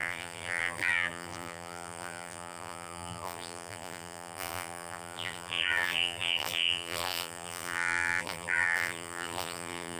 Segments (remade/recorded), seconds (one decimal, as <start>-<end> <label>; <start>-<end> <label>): 0.0-10.0 remade

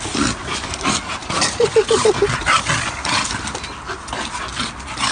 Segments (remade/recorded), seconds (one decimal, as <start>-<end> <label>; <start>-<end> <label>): 0.0-5.1 recorded

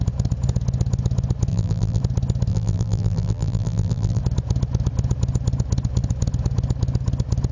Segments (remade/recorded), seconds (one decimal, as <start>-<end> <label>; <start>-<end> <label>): 0.0-1.5 recorded; 1.5-2.0 remade; 2.0-2.5 recorded; 2.5-4.2 remade; 4.2-7.5 recorded

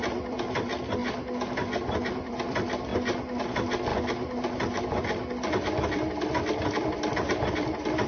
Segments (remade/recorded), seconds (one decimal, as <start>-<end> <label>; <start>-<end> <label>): 0.0-1.0 remade; 1.0-2.1 recorded; 2.1-2.9 remade; 2.9-3.4 recorded; 3.4-3.9 remade; 3.9-5.5 recorded; 5.5-8.1 remade

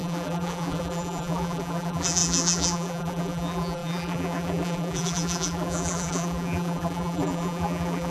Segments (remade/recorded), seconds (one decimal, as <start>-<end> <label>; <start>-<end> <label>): 0.0-8.1 remade

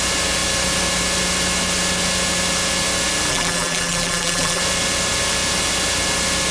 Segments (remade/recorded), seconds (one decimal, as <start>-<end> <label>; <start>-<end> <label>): 0.0-3.3 recorded; 3.3-4.6 remade; 4.6-6.5 recorded

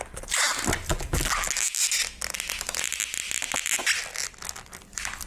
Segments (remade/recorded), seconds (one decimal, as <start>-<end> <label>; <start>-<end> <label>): 0.0-0.9 recorded; 0.9-1.5 remade; 1.5-5.3 recorded

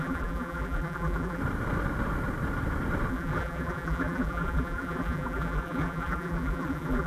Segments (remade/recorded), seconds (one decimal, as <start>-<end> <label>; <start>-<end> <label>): 0.0-1.4 remade; 1.4-3.1 recorded; 3.1-7.1 remade